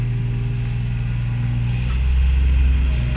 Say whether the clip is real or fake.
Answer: real